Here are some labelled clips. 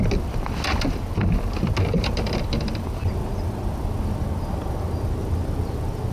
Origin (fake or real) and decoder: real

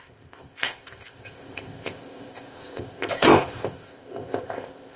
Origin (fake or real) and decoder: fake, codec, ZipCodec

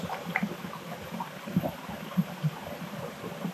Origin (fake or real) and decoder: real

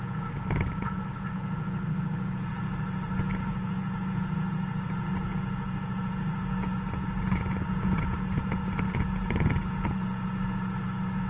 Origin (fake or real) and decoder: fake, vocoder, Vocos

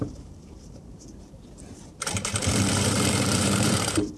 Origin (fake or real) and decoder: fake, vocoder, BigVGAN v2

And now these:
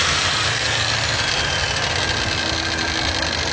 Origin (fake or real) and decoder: real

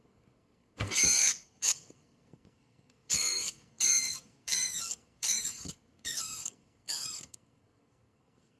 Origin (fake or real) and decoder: fake, codec, SNAC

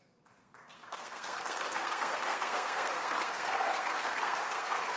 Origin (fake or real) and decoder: fake, codec, SNAC